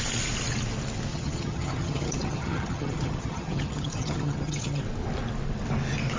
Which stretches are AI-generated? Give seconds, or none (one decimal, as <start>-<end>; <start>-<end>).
1.1-4.8